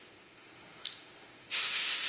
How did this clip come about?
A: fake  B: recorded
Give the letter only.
A